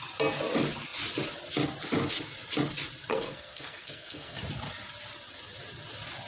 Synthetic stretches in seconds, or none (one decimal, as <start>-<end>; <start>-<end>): 3.1-4.4